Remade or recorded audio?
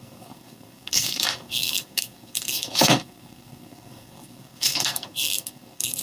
remade